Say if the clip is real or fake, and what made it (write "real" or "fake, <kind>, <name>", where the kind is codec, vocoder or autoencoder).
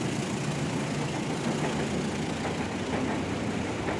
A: real